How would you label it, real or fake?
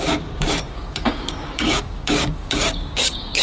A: fake